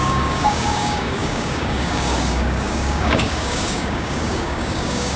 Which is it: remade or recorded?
remade